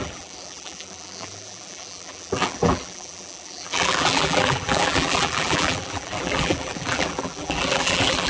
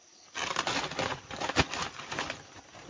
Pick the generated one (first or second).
first